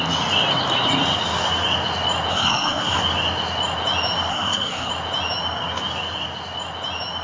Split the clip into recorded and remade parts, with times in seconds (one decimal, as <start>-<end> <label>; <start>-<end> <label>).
0.0-2.3 recorded; 2.3-3.0 remade; 3.0-4.3 recorded; 4.3-4.9 remade; 4.9-7.2 recorded